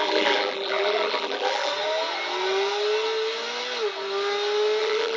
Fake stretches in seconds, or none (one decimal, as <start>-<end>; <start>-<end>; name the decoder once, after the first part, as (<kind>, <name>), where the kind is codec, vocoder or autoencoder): 0.0-1.7 (vocoder, BigVGAN v2); 4.8-5.2